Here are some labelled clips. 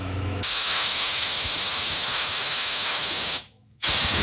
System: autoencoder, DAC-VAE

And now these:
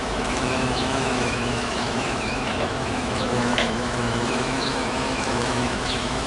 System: autoencoder, DAC-VAE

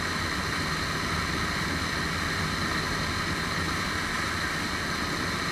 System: none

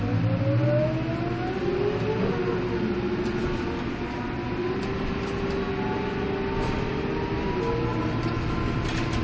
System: none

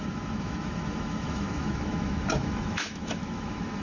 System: autoencoder, DAC-VAE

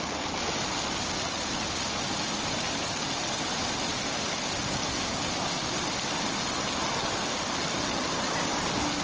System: none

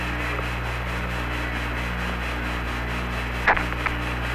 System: none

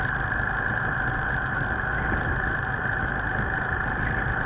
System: none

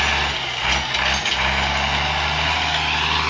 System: none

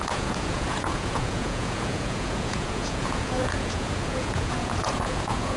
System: vocoder, Vocos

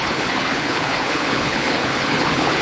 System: codec, HILCodec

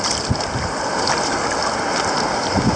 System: none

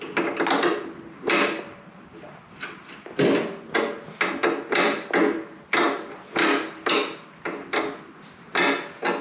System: none